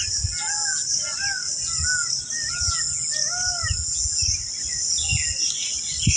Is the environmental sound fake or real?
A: real